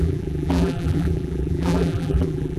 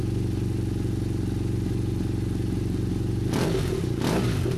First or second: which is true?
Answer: second